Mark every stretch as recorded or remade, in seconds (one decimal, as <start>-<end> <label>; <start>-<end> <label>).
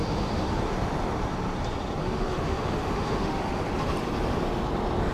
0.0-0.6 remade; 0.6-2.0 recorded; 2.0-3.6 remade; 3.6-5.1 recorded